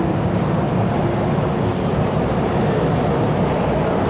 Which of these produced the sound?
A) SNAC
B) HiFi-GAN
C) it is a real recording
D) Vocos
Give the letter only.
C